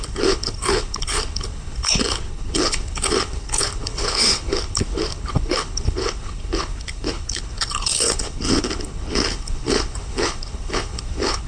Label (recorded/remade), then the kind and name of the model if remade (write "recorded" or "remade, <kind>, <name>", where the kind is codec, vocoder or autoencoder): remade, codec, HILCodec